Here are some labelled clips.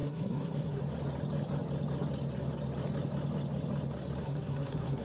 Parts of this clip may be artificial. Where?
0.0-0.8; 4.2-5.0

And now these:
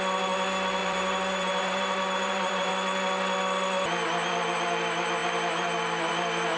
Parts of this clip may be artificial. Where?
0.8-2.7

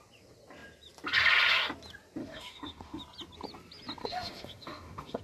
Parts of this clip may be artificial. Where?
2.2-3.0; 4.0-5.2